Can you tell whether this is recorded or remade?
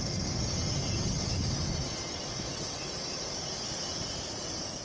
recorded